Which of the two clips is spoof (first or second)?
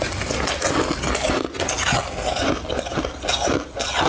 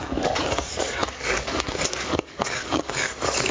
second